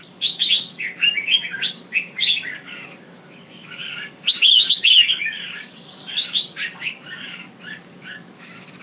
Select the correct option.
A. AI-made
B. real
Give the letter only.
A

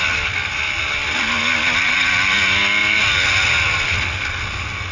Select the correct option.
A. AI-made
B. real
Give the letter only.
B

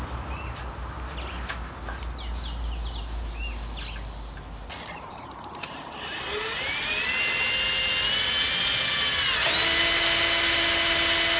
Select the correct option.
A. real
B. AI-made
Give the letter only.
A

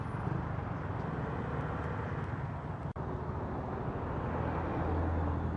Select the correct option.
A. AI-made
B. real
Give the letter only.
B